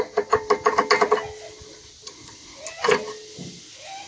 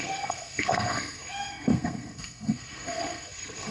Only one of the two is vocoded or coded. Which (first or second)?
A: second